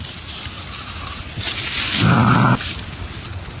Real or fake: real